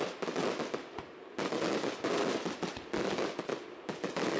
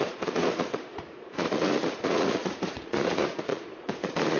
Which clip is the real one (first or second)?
first